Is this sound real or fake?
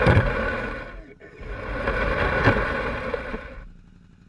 real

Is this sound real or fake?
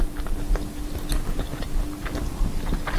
real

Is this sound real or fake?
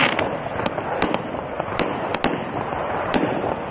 real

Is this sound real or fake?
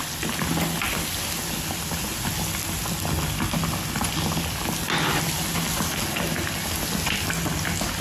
real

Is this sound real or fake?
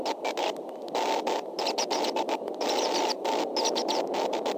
real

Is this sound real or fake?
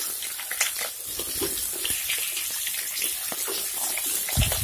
real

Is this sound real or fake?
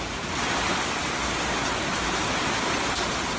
real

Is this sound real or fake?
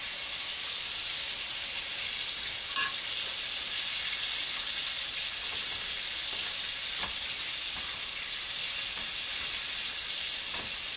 real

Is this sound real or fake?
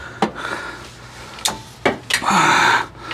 real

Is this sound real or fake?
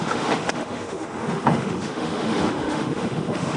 fake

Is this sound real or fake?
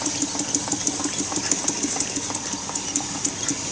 real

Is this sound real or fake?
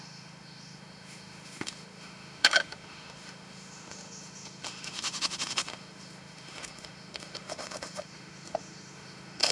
fake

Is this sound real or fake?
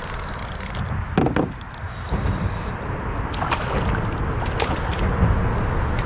real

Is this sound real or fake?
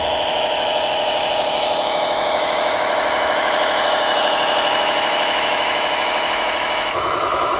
fake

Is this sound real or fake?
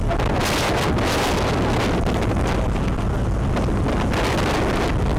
real